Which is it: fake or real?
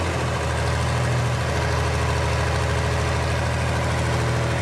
real